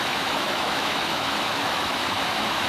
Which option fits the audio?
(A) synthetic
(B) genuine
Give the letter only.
A